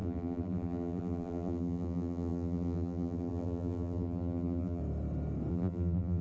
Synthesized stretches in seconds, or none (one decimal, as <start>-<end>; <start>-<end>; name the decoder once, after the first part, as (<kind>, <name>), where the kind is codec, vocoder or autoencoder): 0.0-4.8 (vocoder, BigVGAN v2); 5.5-6.2